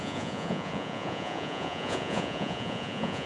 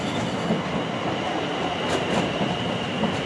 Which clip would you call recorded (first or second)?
second